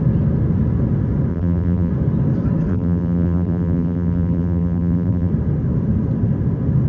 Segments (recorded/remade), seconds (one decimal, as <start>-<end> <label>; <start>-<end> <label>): 0.0-1.3 recorded; 1.3-1.9 remade; 1.9-2.7 recorded; 2.7-5.3 remade; 5.3-6.9 recorded